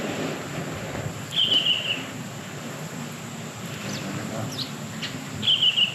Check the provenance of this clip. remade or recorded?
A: recorded